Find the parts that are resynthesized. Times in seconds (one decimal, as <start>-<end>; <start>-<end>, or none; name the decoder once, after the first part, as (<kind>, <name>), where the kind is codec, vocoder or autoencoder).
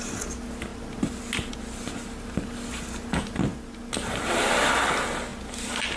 none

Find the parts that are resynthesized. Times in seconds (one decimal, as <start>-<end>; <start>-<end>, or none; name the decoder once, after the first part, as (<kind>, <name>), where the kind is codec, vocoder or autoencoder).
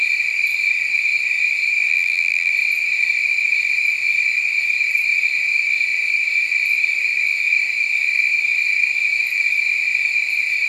1.9-2.5 (vocoder, BigVGAN v2)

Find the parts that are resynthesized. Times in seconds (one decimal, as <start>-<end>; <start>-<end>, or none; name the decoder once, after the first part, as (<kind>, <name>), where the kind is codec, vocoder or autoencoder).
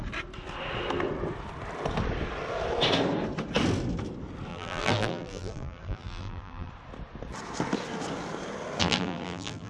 4.5-6.7 (vocoder, BigVGAN v2); 8.8-9.7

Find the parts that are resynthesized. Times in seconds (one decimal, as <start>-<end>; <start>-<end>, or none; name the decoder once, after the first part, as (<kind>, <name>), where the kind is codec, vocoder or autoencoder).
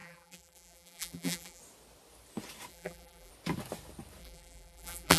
0.0-1.6 (vocoder, BigVGAN v2); 2.7-3.3; 4.2-5.2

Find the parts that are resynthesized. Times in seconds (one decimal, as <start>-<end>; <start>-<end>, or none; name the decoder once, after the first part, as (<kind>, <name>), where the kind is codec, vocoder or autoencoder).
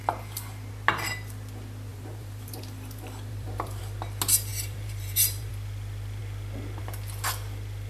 1.9-3.8 (vocoder, BigVGAN v2); 4.5-5.5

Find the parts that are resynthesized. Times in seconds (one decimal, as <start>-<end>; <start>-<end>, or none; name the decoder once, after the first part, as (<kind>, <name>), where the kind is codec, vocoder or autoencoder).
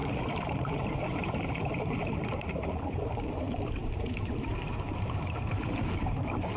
0.0-6.6 (vocoder, BigVGAN v2)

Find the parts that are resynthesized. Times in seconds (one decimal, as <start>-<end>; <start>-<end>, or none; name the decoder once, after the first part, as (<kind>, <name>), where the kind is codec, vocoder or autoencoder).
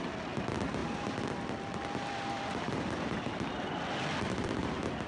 0.0-5.1 (vocoder, BigVGAN v2)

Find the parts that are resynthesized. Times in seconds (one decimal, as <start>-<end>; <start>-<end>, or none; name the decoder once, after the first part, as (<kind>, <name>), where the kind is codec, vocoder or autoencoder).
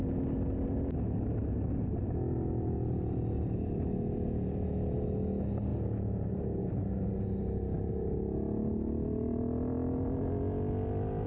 none